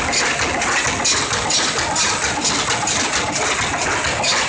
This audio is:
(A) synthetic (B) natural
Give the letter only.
B